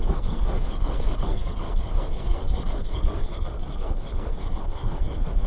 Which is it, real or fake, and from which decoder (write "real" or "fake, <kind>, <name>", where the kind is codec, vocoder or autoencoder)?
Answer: fake, codec, SNAC